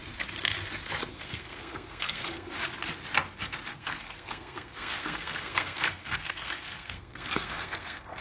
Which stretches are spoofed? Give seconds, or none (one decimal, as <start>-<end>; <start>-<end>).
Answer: 1.1-2.5; 3.7-8.2